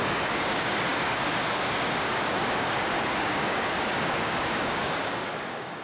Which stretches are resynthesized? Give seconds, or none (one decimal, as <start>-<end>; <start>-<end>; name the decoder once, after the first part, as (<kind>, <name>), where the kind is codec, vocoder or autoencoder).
0.0-5.8 (codec, DAC)

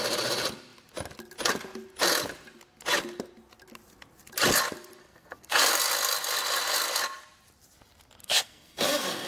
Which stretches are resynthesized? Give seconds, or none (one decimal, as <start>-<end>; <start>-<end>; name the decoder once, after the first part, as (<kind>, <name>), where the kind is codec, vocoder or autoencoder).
5.0-5.7 (codec, SNAC); 8.2-9.3